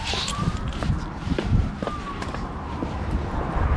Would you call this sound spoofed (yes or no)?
yes